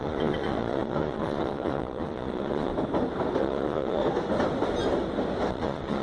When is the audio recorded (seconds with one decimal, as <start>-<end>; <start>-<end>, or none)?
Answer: 2.7-3.4; 4.0-5.5